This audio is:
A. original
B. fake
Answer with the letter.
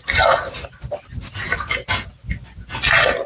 A